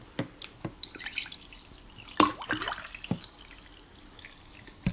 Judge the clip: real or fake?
real